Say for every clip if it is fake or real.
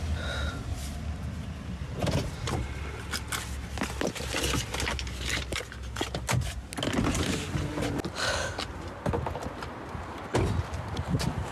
real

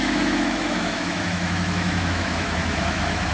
fake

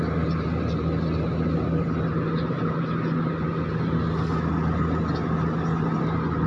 real